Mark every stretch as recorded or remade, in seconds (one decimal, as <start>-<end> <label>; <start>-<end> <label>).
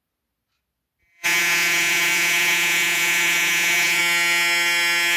0.0-1.0 recorded; 1.0-4.0 remade; 4.0-5.2 recorded